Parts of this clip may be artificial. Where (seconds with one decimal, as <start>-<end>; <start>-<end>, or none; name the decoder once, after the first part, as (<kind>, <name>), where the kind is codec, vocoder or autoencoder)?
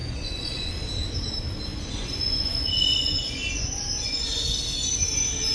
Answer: 0.0-0.7 (vocoder, Vocos); 1.7-4.6